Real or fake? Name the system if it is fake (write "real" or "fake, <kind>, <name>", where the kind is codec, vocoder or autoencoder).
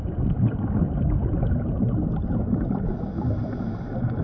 real